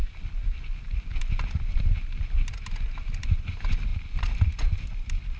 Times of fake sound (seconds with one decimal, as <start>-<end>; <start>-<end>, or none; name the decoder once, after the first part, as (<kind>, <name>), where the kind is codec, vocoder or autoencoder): none